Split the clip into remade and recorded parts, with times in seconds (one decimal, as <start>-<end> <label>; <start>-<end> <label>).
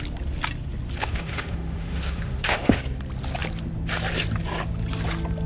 0.0-1.0 recorded; 1.0-2.8 remade; 2.8-5.5 recorded